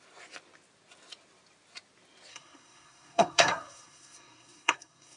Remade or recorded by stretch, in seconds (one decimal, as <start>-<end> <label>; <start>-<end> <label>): 0.0-2.3 recorded; 2.3-5.2 remade